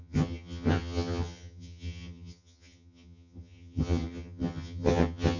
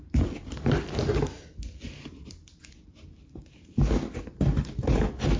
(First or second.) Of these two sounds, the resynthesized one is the first